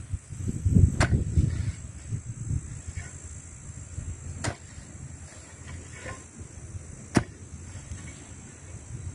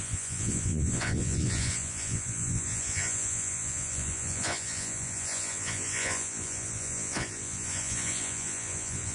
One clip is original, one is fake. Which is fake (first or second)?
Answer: second